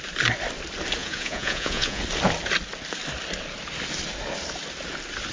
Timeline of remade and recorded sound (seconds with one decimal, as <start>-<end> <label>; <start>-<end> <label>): 0.0-1.0 recorded; 1.0-2.0 remade; 2.0-5.3 recorded